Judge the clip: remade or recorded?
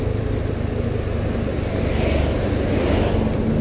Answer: recorded